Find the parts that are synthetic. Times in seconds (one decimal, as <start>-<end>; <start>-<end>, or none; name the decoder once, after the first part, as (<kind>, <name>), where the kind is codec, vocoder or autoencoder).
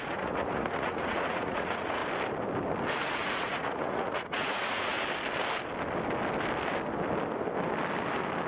0.0-2.0 (vocoder, Vocos); 2.9-4.9